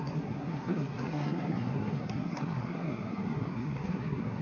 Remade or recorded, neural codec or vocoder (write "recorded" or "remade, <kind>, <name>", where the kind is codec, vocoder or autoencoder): remade, codec, SNAC